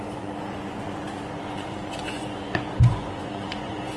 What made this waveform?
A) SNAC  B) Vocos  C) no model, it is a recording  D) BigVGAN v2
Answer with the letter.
B